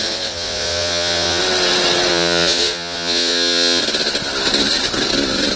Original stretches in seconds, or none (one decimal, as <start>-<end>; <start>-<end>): 1.4-2.1; 3.8-5.6